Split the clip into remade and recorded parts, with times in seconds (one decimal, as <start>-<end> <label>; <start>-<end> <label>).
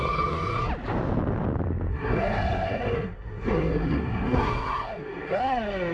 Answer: 0.0-0.7 remade; 0.7-1.9 recorded; 1.9-5.9 remade